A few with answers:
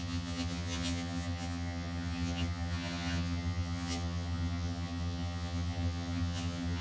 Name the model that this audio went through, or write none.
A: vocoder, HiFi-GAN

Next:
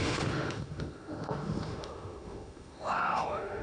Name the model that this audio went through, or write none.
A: autoencoder, DAC-VAE